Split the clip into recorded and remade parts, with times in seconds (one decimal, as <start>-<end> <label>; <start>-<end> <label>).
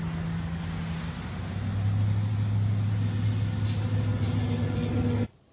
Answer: 0.0-5.5 recorded